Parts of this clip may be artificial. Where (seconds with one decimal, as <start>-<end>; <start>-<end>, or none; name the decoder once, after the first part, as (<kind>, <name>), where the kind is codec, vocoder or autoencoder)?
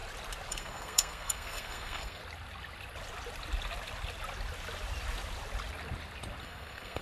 0.5-2.2 (codec, SNAC); 6.4-7.0